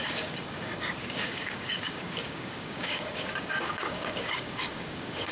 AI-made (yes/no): yes